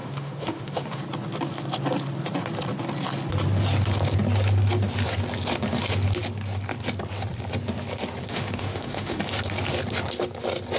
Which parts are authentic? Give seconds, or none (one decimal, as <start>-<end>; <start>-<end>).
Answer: 1.0-8.3; 9.2-10.8